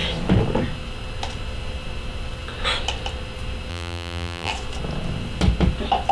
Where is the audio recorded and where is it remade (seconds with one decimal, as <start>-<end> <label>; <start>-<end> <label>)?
0.0-3.7 recorded; 3.7-4.5 remade; 4.5-6.1 recorded